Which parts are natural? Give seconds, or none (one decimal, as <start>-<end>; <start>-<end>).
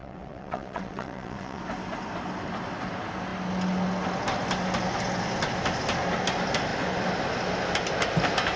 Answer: 1.6-8.6